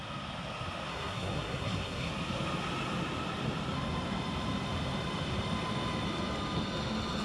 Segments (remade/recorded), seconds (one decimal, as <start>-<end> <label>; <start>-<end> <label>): 0.0-0.9 recorded; 0.9-2.1 remade; 2.1-7.2 recorded